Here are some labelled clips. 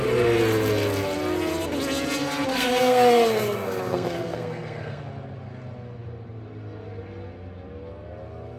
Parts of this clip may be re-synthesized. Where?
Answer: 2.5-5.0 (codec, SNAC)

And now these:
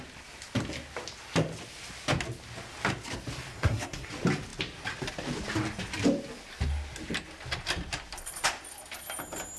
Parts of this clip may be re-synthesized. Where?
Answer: 3.5-4.1 (codec, SNAC)